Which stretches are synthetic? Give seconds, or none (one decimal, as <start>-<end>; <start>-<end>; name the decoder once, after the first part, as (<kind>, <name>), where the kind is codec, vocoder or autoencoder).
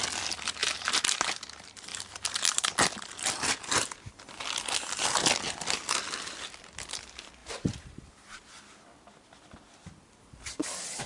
0.6-1.4 (vocoder, BigVGAN v2); 1.9-2.6; 7.4-8.6